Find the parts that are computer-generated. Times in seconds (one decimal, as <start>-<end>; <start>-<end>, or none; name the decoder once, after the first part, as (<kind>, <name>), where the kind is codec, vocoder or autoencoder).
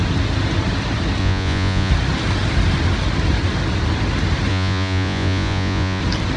1.2-1.9 (vocoder, Vocos); 4.5-6.0